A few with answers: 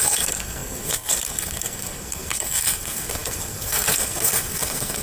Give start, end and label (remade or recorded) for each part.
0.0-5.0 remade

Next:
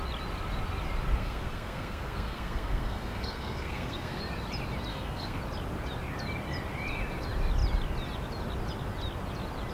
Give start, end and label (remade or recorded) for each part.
0.0-1.2 recorded; 1.2-4.2 remade; 4.2-4.9 recorded; 4.9-5.4 remade; 5.4-9.7 recorded

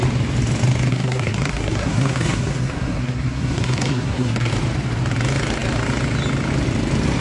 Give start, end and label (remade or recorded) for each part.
0.0-0.9 recorded; 0.9-4.5 remade; 4.5-7.2 recorded

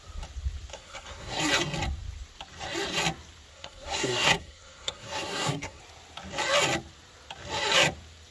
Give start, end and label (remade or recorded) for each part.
0.0-0.7 recorded; 0.7-1.4 remade; 1.4-3.5 recorded; 3.5-5.8 remade; 5.8-8.3 recorded

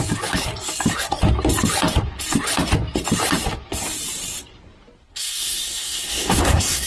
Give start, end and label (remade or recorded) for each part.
0.0-5.1 recorded; 5.1-6.9 remade

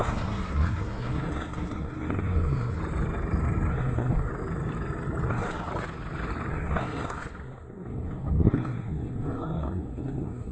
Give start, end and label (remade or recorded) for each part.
0.0-2.8 remade; 2.8-3.7 recorded; 3.7-4.3 remade; 4.3-5.3 recorded; 5.3-5.7 remade; 5.7-6.5 recorded; 6.5-10.5 remade

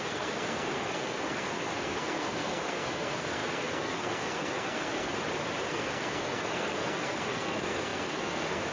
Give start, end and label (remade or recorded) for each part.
0.0-5.1 remade; 5.1-5.7 recorded; 5.7-8.7 remade

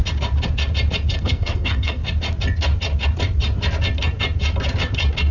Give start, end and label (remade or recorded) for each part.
0.0-1.2 recorded; 1.2-2.0 remade; 2.0-5.3 recorded